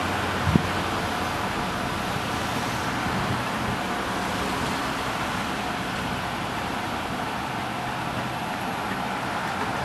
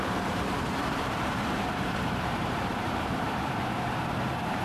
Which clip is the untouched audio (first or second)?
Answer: first